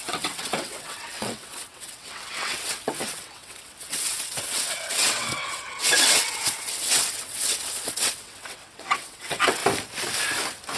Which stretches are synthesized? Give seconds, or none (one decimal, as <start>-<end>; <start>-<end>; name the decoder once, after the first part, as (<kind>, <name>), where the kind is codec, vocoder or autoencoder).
0.0-9.6 (vocoder, WaveNeXt)